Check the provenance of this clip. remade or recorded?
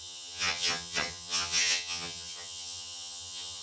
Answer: remade